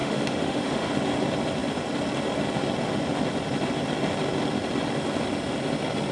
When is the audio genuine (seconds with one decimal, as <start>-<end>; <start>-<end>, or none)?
0.9-6.1